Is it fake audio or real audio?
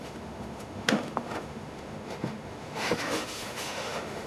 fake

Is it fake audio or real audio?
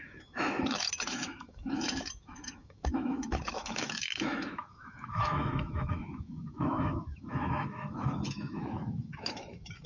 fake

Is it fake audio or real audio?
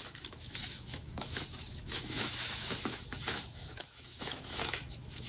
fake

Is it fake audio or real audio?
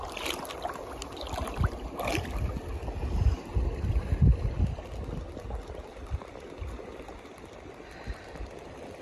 real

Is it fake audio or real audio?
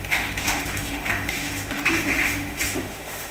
fake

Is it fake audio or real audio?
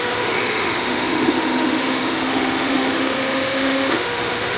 fake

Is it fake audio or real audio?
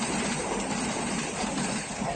real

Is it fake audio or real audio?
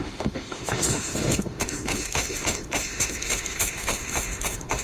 fake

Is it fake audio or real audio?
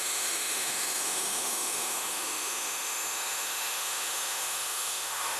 fake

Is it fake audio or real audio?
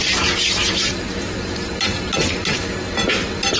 real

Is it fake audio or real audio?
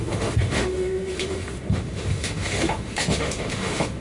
fake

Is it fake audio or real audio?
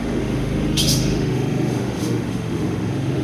fake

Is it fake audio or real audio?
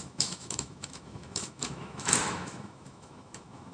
fake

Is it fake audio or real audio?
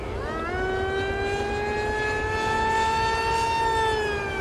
real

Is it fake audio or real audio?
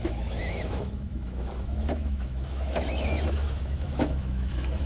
fake